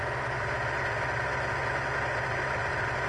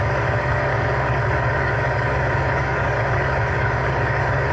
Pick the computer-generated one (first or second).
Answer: second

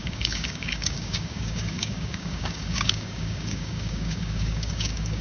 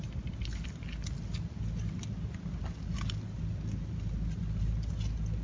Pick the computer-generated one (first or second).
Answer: first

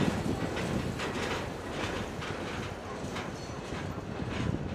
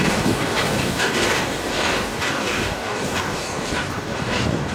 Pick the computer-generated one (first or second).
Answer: second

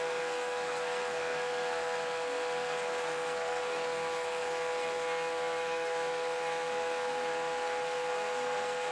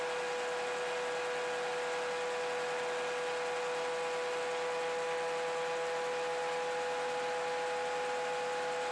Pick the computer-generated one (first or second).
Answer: first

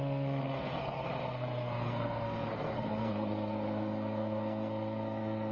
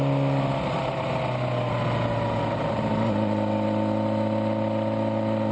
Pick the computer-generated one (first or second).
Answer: first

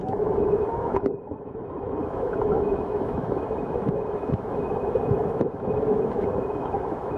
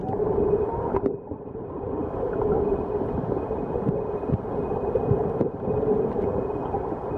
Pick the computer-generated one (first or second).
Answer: first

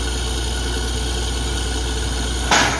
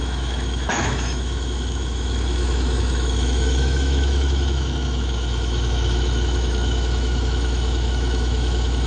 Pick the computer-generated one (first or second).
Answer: second